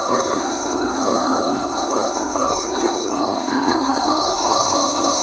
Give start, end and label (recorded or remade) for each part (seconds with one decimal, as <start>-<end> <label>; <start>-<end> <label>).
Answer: 0.0-5.2 remade